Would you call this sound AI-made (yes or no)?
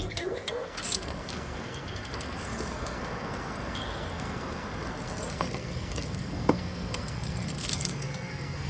yes